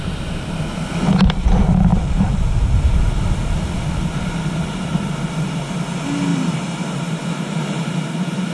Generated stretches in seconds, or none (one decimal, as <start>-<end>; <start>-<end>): 1.9-3.1; 6.3-8.5